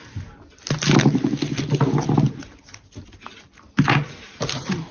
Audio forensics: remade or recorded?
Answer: recorded